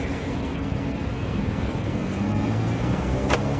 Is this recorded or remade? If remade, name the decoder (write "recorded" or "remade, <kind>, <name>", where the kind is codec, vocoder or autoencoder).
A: remade, codec, SNAC